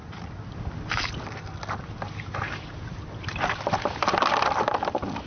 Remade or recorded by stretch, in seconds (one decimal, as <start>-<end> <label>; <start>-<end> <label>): 0.0-5.3 recorded